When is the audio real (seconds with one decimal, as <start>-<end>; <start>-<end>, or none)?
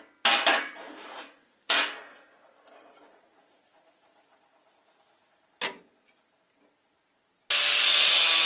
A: 0.0-0.5; 5.4-8.5